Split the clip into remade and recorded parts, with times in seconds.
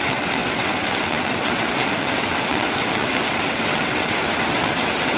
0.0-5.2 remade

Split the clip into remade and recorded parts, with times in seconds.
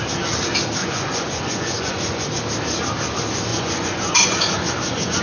0.0-0.8 recorded; 0.8-2.3 remade; 2.3-3.5 recorded; 3.5-5.2 remade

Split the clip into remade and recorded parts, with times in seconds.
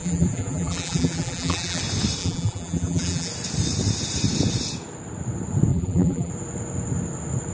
0.0-1.8 remade; 1.8-2.2 recorded; 2.2-3.3 remade; 3.3-5.7 recorded; 5.7-6.3 remade; 6.3-7.5 recorded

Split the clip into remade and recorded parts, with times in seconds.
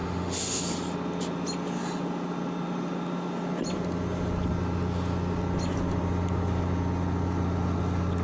0.0-0.6 remade; 0.6-8.2 recorded